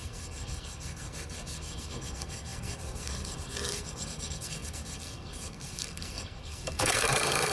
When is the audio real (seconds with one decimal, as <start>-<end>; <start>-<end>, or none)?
none